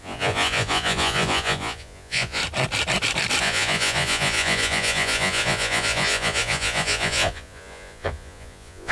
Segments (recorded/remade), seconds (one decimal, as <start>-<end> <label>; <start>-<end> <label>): 0.0-2.4 remade; 2.4-3.4 recorded; 3.4-8.9 remade